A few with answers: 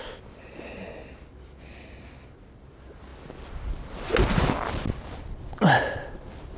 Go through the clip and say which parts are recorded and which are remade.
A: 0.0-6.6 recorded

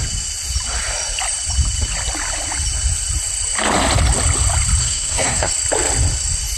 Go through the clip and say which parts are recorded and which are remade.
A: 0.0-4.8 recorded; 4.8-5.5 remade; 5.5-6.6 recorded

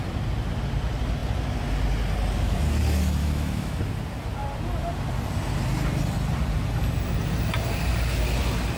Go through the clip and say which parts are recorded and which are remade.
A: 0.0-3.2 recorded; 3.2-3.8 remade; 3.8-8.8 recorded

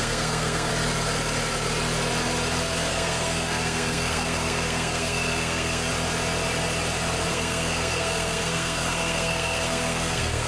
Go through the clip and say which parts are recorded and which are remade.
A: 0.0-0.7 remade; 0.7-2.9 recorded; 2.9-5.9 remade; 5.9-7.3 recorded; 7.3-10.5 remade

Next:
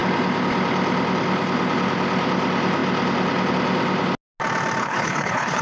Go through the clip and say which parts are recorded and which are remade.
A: 0.0-4.8 recorded; 4.8-5.6 remade

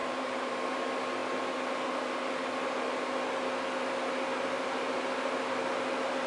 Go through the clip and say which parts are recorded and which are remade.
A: 0.0-0.6 remade; 0.6-6.3 recorded

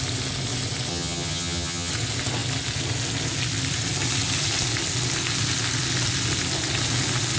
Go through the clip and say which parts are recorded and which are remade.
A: 0.0-0.9 recorded; 0.9-1.9 remade; 1.9-7.4 recorded

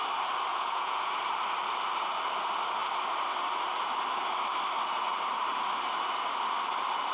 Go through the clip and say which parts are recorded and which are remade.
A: 0.0-0.5 recorded; 0.5-1.1 remade; 1.1-7.1 recorded